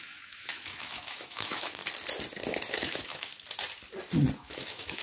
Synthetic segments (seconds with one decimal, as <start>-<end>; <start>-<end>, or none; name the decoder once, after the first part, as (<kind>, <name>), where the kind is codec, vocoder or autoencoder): 0.0-1.8 (autoencoder, DAC-VAE); 2.8-3.3; 4.4-5.0